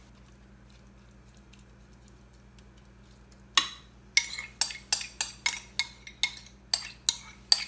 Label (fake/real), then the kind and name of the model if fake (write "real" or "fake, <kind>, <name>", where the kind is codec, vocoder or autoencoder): real